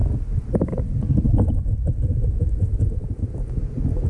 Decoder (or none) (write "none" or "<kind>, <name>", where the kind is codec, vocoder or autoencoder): none